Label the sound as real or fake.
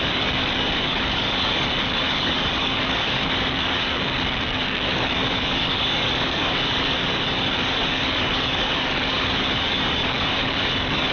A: fake